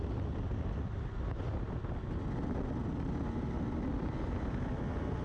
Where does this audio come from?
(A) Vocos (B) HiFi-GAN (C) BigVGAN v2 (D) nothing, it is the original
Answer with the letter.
D